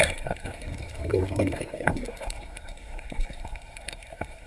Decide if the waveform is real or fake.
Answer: fake